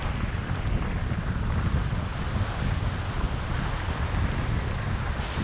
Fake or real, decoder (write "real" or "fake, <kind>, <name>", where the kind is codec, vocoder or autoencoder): real